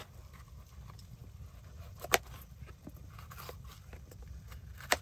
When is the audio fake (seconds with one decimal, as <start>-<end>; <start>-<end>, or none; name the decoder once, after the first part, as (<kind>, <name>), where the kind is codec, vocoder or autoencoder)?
none